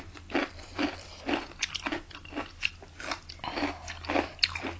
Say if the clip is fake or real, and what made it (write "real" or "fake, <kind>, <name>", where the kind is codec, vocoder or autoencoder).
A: real